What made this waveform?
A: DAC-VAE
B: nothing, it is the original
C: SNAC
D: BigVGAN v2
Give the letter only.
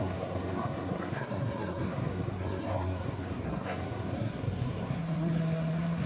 C